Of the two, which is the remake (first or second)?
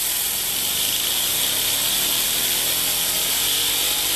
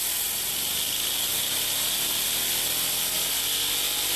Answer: first